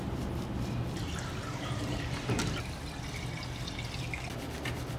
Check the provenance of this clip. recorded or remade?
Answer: recorded